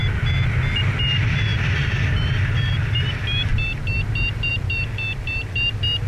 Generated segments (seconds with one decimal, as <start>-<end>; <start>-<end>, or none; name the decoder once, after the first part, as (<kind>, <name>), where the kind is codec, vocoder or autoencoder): none